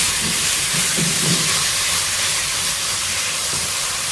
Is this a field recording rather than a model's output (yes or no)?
no